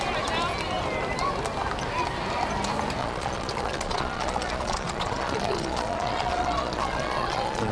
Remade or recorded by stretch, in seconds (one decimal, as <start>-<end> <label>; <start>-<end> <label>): 0.0-3.0 recorded; 3.0-7.7 remade